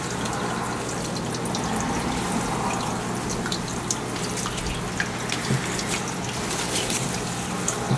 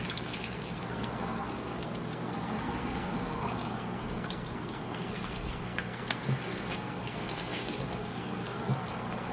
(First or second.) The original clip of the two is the first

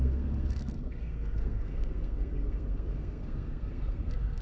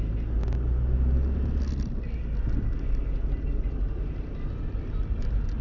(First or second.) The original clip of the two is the second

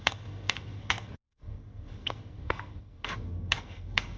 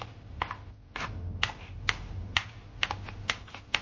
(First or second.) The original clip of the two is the second